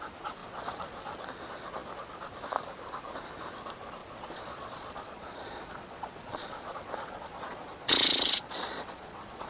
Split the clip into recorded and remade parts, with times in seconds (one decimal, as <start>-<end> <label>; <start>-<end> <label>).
0.0-0.4 recorded; 0.4-1.2 remade; 1.2-4.0 recorded; 4.0-9.5 remade